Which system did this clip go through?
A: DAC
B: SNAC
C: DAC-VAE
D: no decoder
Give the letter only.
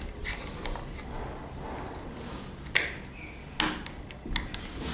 D